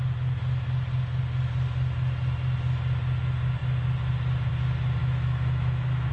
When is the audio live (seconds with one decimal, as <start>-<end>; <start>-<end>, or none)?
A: 0.0-5.0